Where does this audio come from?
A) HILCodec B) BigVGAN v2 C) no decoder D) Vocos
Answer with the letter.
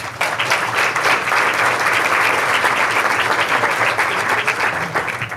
B